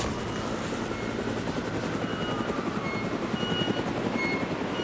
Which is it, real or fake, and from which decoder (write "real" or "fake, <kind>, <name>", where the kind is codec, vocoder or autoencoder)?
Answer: real